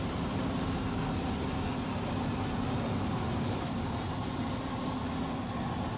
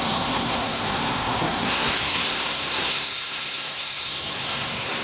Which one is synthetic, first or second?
second